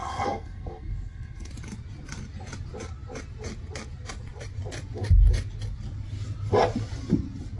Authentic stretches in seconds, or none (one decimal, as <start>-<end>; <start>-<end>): 1.5-7.6